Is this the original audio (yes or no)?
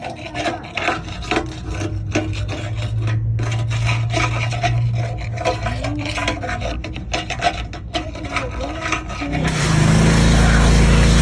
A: yes